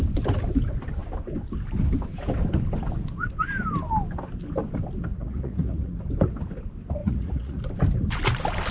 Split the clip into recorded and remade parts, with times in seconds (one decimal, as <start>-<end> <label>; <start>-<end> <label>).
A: 0.0-5.1 recorded; 5.1-6.0 remade; 6.0-7.0 recorded; 7.0-7.6 remade; 7.6-8.7 recorded